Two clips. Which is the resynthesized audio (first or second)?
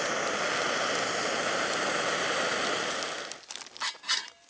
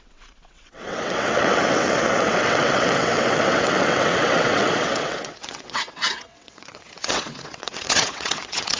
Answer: second